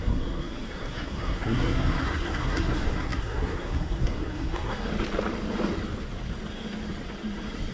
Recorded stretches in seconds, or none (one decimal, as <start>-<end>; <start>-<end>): 4.9-7.7